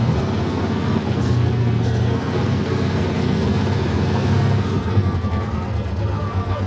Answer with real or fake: fake